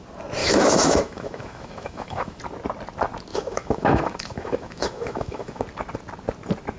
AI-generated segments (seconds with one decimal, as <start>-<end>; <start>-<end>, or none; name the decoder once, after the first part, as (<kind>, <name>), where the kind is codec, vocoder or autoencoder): 0.4-2.4 (autoencoder, DAC-VAE); 3.3-5.6